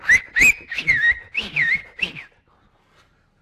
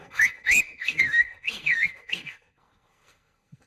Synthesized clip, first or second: second